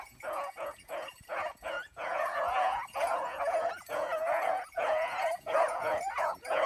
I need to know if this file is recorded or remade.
remade